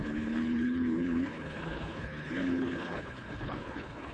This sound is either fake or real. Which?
fake